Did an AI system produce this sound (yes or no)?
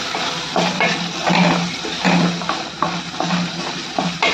no